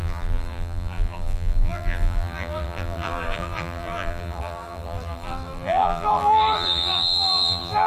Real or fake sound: fake